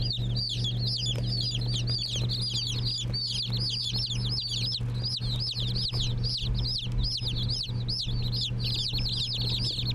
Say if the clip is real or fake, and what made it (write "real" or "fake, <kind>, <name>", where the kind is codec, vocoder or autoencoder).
real